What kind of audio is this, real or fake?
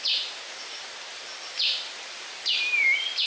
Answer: fake